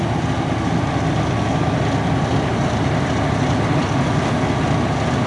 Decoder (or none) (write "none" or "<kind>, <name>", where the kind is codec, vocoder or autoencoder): none